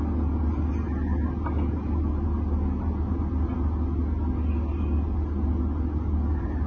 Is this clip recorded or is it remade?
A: recorded